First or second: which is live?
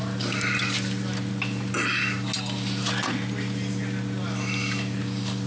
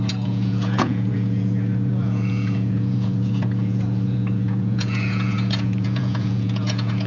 first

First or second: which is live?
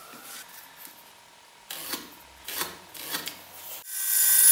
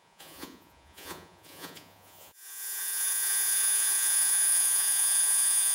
first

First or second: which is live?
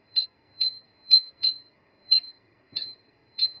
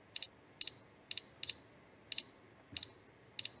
second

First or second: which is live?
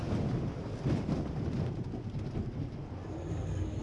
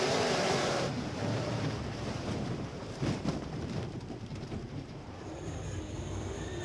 first